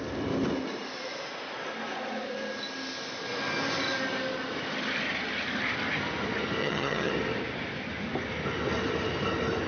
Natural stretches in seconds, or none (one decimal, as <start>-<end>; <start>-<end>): 0.0-6.6; 7.1-9.7